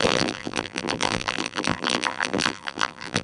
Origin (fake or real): fake